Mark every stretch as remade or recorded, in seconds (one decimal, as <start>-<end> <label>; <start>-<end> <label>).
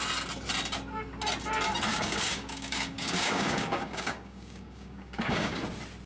0.0-1.9 recorded; 1.9-5.6 remade; 5.6-6.1 recorded